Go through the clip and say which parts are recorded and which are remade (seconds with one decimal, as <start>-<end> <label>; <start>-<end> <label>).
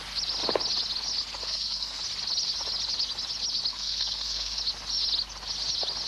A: 0.0-1.4 recorded; 1.4-2.0 remade; 2.0-3.7 recorded; 3.7-4.6 remade; 4.6-6.1 recorded